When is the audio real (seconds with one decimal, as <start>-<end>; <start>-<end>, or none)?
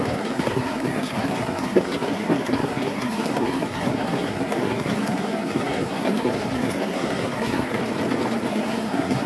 7.8-8.5